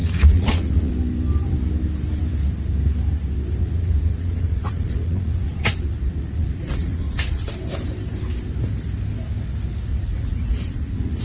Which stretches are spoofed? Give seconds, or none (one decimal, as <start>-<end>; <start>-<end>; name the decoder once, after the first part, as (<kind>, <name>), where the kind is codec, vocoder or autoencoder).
0.0-0.9 (vocoder, Vocos); 3.6-7.5; 9.9-11.2